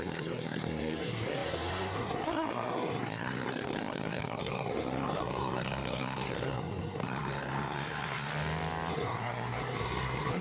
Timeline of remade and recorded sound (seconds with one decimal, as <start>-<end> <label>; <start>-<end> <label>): 0.0-8.3 remade; 8.3-8.9 recorded; 8.9-10.4 remade